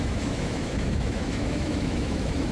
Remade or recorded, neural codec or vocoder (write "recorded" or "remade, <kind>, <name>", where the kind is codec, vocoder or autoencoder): remade, autoencoder, DAC-VAE